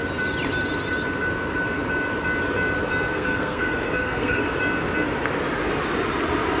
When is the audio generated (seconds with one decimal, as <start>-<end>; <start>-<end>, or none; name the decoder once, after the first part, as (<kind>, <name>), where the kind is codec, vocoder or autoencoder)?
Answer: 3.1-4.4 (codec, SNAC)